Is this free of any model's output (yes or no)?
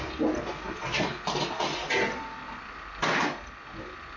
yes